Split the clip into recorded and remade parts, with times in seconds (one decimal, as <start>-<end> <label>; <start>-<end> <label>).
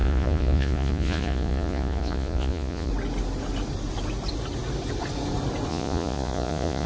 0.0-2.9 remade; 2.9-5.7 recorded; 5.7-6.9 remade